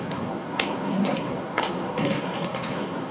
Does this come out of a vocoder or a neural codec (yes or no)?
yes